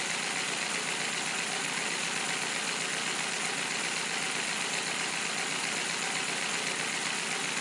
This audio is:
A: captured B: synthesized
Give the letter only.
A